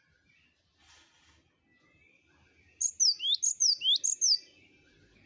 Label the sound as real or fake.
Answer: real